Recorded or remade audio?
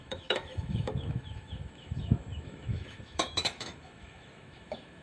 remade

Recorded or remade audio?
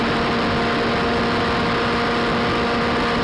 recorded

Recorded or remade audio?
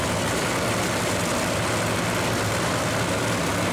recorded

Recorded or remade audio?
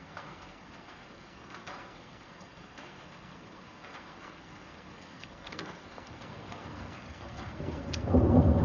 remade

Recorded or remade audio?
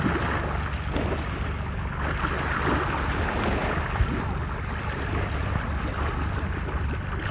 recorded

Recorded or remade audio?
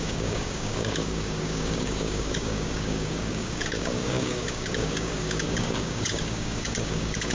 remade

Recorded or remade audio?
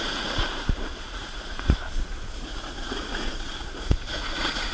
remade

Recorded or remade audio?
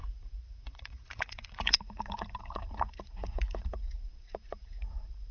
remade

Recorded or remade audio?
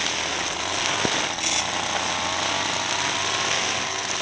recorded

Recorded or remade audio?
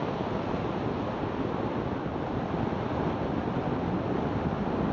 recorded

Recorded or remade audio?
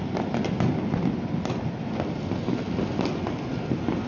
recorded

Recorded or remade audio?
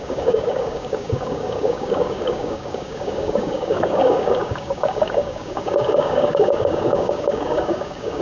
remade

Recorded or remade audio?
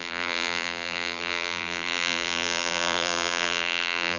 remade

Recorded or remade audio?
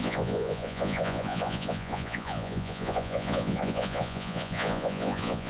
remade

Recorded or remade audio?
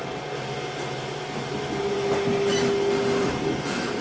recorded